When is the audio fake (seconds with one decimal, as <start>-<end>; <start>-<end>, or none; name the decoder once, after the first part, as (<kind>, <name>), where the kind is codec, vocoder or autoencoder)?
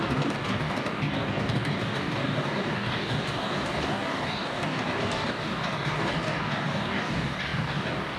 0.0-8.2 (codec, DAC)